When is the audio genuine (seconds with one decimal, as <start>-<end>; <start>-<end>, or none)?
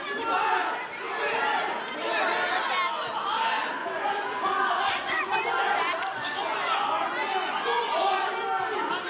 0.0-3.8; 8.3-9.1